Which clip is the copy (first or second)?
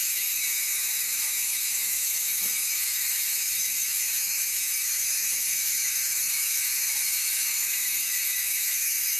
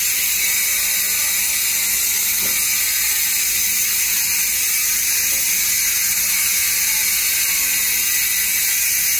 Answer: first